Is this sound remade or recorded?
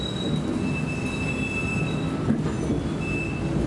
recorded